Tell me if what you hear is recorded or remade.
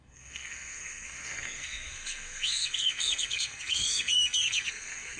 remade